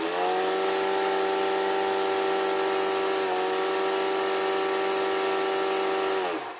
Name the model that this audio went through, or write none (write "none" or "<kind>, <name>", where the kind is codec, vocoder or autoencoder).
none